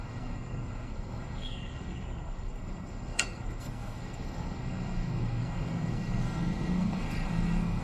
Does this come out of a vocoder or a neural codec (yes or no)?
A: yes